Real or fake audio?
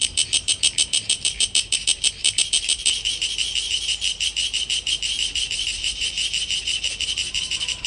fake